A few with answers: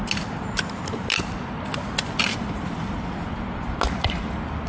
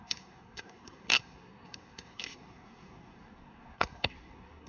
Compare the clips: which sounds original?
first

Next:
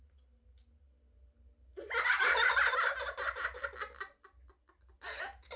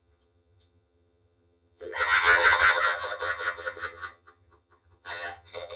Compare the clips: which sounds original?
first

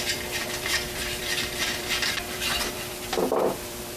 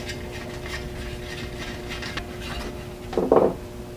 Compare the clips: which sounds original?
second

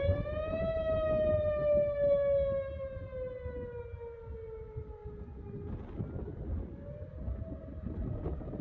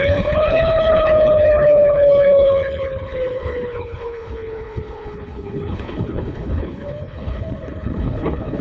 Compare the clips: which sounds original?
first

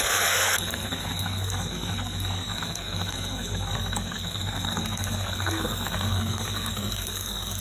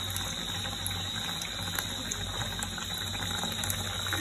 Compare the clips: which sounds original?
second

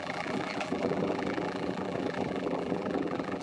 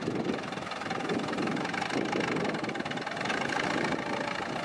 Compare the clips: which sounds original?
second